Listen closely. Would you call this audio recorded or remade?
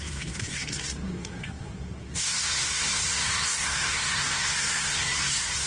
remade